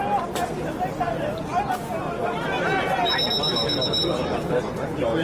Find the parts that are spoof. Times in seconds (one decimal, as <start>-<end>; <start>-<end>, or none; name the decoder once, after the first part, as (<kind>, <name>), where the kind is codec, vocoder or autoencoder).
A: none